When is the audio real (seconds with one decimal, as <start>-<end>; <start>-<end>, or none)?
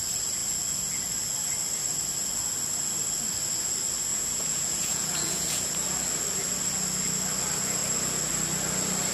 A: 0.0-4.1; 5.7-9.1